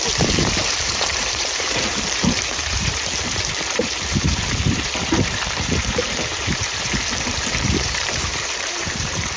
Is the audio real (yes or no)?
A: no